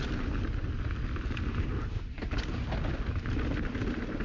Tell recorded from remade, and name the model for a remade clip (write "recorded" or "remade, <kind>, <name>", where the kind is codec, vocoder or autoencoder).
recorded